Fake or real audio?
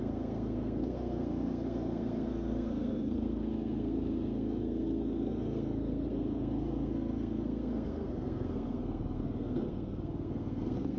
fake